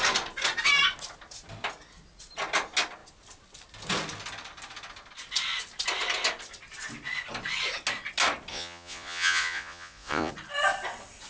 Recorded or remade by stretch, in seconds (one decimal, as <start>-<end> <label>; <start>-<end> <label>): 0.0-8.5 recorded; 8.5-10.3 remade; 10.3-11.3 recorded